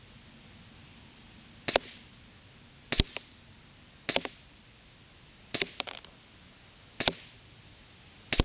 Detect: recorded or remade recorded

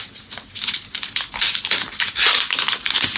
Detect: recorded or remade recorded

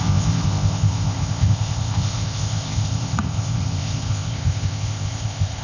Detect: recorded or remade remade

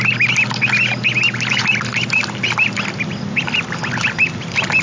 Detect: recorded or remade recorded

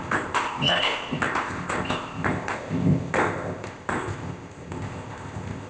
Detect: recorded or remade remade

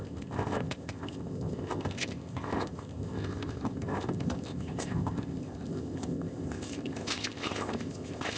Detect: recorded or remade remade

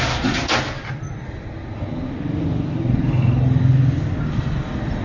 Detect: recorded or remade recorded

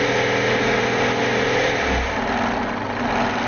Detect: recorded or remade recorded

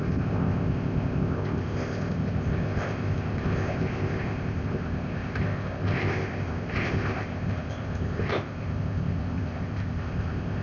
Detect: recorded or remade remade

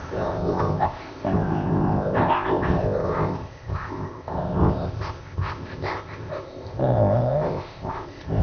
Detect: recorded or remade remade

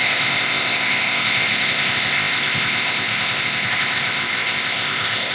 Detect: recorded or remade remade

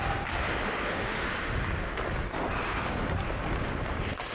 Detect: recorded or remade recorded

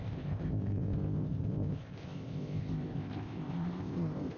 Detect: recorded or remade remade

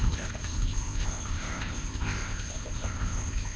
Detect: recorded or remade remade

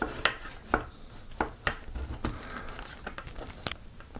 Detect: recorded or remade recorded